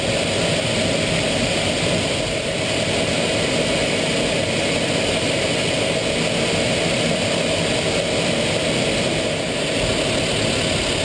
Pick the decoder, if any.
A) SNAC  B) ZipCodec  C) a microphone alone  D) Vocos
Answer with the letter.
C